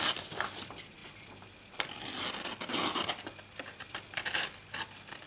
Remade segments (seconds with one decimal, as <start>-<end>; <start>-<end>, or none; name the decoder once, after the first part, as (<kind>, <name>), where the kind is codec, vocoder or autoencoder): none